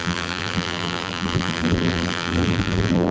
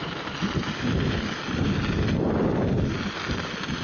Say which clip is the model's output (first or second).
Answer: first